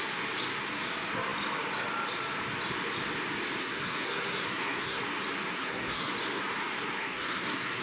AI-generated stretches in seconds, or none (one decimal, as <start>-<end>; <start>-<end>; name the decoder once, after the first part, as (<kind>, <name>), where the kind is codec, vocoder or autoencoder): 3.6-5.0 (codec, SNAC); 5.5-6.1; 7.0-7.8